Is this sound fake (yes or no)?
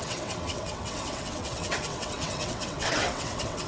yes